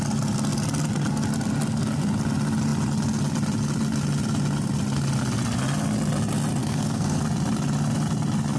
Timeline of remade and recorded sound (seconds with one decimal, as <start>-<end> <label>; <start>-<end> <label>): 0.0-6.6 recorded; 6.6-7.2 remade; 7.2-8.6 recorded